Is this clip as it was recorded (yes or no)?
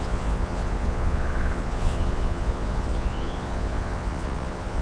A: no